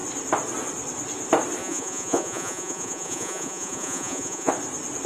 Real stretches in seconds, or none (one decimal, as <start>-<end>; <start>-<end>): 0.0-1.6; 4.5-5.1